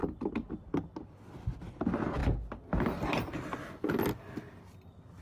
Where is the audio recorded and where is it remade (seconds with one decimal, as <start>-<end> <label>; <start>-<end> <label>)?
0.0-5.2 recorded

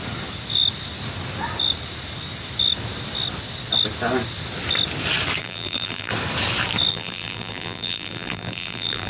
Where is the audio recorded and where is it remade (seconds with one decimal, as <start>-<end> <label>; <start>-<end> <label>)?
0.0-5.4 recorded; 5.4-6.1 remade; 6.1-6.9 recorded; 6.9-9.1 remade

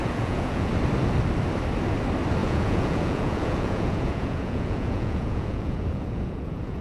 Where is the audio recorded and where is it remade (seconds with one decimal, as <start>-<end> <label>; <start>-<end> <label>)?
0.0-0.7 remade; 0.7-2.4 recorded; 2.4-6.8 remade